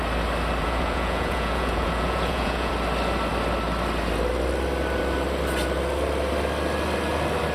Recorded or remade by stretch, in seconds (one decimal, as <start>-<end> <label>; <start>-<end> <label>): 0.0-0.6 recorded; 0.6-2.7 remade; 2.7-7.5 recorded